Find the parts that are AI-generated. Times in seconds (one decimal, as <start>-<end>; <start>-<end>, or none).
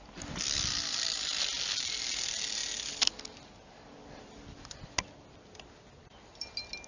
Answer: none